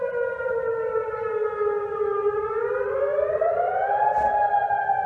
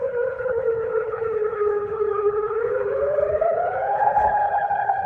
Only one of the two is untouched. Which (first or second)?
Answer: first